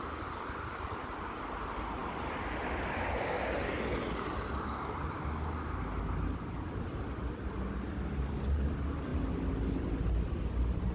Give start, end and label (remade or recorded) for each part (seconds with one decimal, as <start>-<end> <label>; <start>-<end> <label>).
0.0-10.9 recorded